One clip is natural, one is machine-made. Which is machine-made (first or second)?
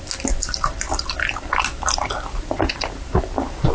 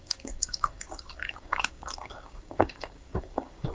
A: second